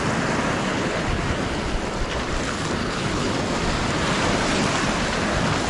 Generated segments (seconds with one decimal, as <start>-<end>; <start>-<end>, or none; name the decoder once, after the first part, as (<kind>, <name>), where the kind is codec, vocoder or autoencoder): 0.7-1.2 (codec, HILCodec); 2.8-3.3